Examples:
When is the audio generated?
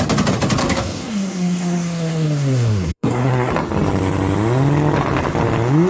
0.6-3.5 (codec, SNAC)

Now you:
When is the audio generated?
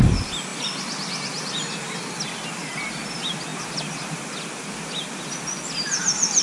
none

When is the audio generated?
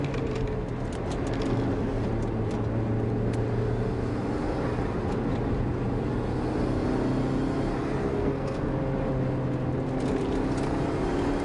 8.1-8.7 (codec, SNAC)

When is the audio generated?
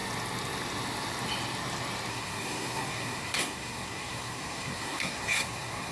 2.1-5.9 (codec, SNAC)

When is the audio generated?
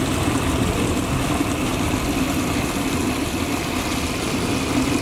none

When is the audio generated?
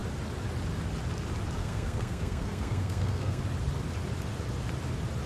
1.6-3.4 (codec, SNAC)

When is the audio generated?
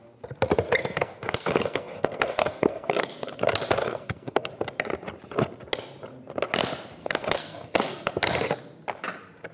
0.8-3.4 (codec, SNAC); 3.8-4.5; 7.0-8.1